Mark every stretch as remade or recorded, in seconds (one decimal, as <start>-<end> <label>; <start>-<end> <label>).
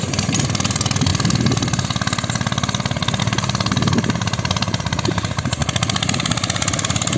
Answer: 0.0-1.1 remade; 1.1-3.2 recorded; 3.2-5.6 remade; 5.6-6.1 recorded; 6.1-7.2 remade